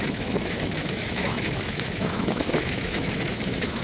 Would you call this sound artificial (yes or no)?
yes